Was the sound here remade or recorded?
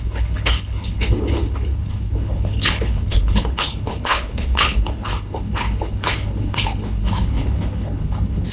remade